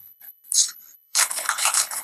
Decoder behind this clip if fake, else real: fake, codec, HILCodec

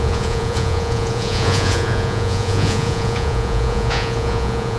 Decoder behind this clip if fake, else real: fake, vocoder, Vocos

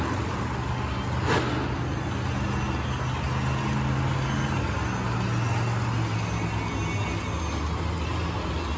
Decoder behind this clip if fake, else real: real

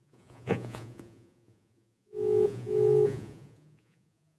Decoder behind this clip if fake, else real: fake, vocoder, Vocos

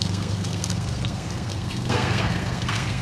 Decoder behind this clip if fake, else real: fake, codec, SNAC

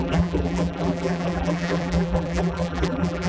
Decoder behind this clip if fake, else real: fake, vocoder, BigVGAN v2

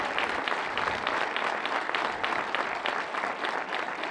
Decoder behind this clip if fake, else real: real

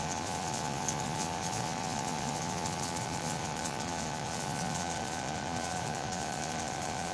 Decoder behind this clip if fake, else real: fake, vocoder, Vocos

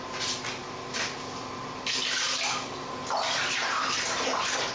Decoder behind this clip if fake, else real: real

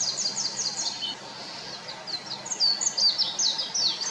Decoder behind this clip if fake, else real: real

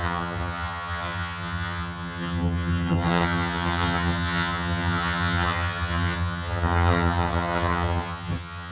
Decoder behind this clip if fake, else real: fake, vocoder, HiFi-GAN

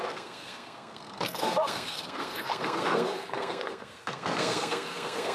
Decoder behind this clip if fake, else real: fake, codec, SNAC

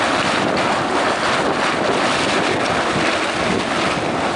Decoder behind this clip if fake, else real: real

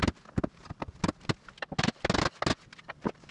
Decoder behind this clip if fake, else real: real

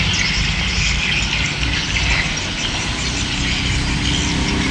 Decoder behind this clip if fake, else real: real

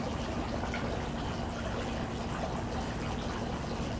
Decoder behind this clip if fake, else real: real